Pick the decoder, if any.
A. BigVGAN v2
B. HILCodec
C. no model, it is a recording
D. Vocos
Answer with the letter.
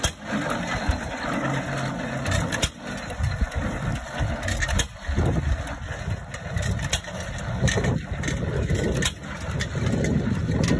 C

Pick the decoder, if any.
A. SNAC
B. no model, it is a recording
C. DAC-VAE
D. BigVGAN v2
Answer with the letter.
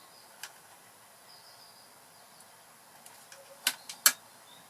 B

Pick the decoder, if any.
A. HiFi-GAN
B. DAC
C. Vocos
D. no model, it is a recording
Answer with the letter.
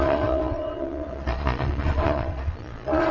C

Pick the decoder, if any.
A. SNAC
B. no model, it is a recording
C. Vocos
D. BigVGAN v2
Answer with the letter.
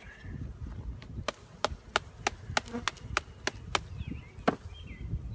B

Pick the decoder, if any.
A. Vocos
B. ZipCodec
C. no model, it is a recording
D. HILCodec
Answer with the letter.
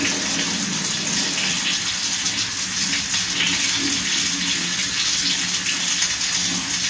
C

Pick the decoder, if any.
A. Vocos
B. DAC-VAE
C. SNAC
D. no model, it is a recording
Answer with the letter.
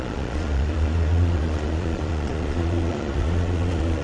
A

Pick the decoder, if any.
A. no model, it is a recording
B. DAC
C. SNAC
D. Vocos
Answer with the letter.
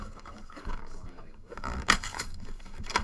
B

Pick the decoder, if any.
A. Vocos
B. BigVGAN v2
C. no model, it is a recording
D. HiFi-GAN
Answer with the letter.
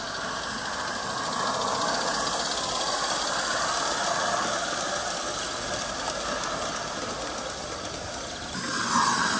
C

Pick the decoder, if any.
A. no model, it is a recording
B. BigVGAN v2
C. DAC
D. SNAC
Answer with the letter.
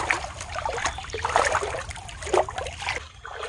A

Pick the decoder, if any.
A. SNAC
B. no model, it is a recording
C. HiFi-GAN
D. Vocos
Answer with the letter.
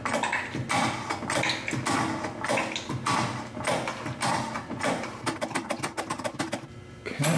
B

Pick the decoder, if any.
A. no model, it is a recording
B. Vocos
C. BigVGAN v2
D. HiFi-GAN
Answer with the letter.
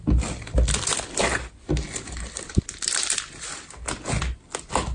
A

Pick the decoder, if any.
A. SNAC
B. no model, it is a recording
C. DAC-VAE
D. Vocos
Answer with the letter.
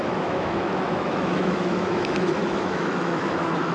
C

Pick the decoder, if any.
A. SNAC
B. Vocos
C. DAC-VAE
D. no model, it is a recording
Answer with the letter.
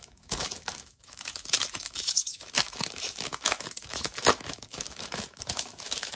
C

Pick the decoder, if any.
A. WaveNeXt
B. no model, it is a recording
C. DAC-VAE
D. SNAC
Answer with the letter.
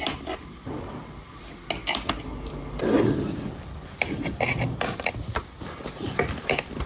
B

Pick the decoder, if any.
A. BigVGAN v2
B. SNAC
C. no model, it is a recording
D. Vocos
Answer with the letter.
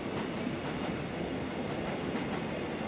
C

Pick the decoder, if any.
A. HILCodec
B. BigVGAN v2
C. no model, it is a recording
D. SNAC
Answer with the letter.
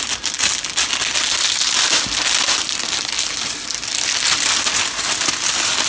C